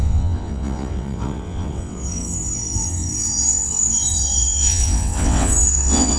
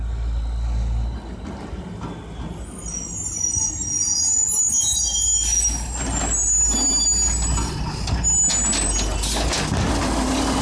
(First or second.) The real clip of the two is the second